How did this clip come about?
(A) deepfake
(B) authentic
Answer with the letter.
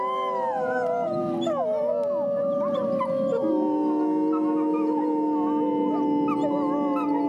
B